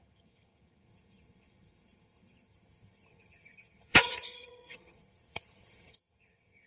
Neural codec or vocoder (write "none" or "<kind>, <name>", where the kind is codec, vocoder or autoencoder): vocoder, HiFi-GAN